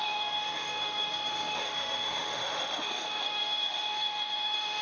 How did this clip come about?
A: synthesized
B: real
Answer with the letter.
A